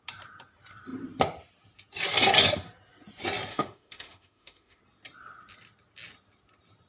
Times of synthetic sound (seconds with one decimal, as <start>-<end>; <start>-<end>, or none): 3.5-4.8